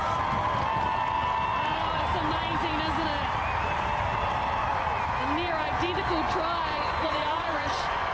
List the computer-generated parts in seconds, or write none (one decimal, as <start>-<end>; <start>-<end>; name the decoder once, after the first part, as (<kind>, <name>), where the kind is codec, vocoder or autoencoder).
6.7-8.1 (vocoder, Vocos)